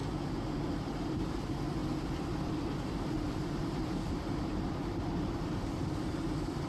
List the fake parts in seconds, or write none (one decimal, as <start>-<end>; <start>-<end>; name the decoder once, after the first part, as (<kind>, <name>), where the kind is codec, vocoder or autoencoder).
1.0-1.8 (vocoder, BigVGAN v2); 2.4-6.7